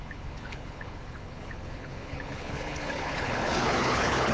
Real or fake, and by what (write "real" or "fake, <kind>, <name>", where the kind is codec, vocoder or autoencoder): fake, codec, HILCodec